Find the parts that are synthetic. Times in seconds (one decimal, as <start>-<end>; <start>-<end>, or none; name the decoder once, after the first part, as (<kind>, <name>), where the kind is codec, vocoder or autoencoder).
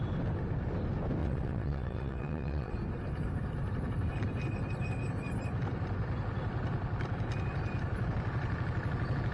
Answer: 1.2-2.7 (vocoder, WaveNeXt)